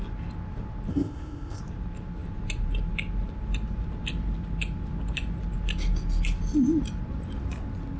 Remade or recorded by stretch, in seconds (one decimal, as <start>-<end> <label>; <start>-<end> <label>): 0.0-0.9 recorded; 0.9-1.6 remade; 1.6-8.0 recorded